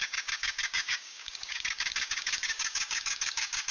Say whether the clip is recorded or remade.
remade